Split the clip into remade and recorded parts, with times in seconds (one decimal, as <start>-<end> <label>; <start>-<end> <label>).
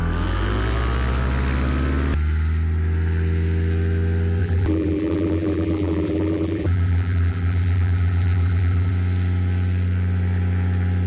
0.0-4.4 recorded; 4.4-8.9 remade; 8.9-11.1 recorded